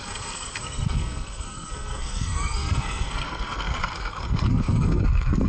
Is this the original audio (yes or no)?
no